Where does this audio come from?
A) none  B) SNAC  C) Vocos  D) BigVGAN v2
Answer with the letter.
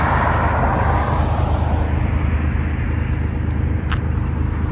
A